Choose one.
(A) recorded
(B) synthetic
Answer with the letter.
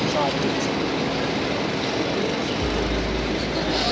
A